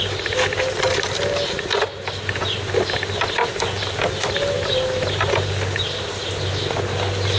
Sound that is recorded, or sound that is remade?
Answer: recorded